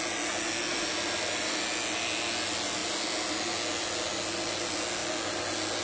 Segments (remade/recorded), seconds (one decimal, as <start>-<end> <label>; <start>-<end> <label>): 0.0-0.7 recorded; 0.7-1.6 remade; 1.6-5.8 recorded